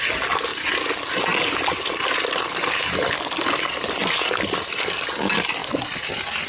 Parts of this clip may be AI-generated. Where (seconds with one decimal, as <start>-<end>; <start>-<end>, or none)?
5.6-6.5